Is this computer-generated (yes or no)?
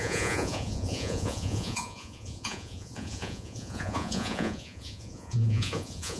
yes